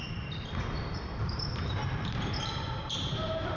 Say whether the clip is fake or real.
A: fake